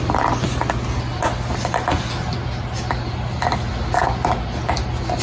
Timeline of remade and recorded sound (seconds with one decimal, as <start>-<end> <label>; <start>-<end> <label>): 0.0-5.2 recorded